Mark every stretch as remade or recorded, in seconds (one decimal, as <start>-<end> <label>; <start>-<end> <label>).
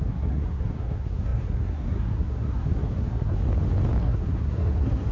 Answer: 0.0-3.4 remade; 3.4-4.0 recorded; 4.0-5.1 remade